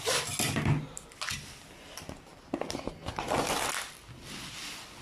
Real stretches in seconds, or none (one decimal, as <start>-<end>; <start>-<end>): 0.0-5.0